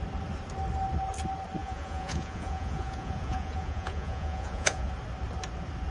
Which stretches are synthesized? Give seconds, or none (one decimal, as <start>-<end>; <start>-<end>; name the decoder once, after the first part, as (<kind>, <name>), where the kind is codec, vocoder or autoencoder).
1.6-4.9 (vocoder, Vocos)